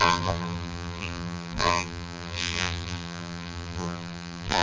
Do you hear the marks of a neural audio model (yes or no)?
yes